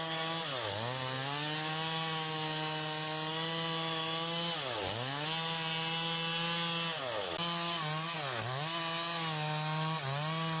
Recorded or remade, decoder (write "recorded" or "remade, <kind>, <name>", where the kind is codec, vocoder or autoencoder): recorded